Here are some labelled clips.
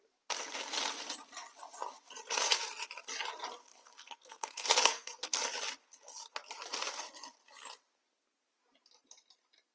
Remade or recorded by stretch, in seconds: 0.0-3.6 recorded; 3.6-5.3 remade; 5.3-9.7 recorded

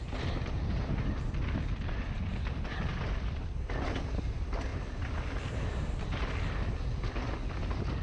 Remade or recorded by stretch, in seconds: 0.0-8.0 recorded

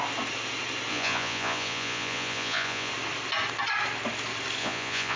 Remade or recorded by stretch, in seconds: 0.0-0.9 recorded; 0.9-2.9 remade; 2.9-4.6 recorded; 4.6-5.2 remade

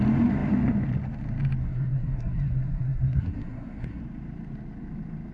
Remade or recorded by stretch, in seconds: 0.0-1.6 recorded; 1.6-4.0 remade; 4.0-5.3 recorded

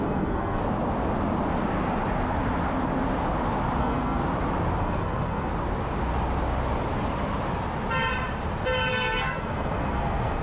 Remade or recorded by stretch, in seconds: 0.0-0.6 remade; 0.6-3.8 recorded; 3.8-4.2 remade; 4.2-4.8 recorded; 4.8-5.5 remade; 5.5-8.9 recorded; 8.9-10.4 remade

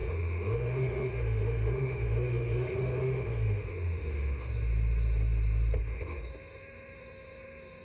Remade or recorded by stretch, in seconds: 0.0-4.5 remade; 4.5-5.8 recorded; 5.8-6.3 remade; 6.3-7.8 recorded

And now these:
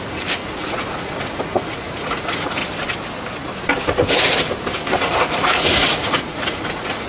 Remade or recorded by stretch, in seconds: 0.0-2.6 remade; 2.6-5.0 recorded; 5.0-7.1 remade

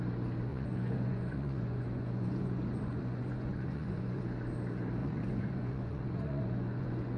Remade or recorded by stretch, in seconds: 0.0-0.5 recorded; 0.5-4.2 remade; 4.2-5.0 recorded; 5.0-7.2 remade